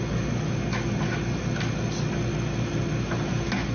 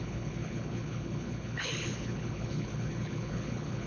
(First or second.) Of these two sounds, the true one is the first